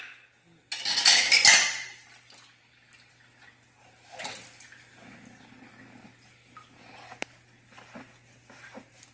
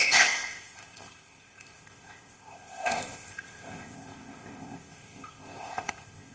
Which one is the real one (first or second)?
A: first